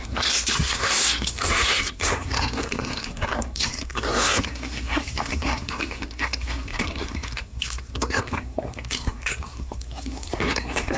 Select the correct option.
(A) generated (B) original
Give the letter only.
A